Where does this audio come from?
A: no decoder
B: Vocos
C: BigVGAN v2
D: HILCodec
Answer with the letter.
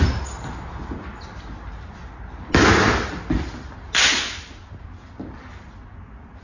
A